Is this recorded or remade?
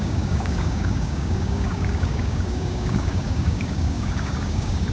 remade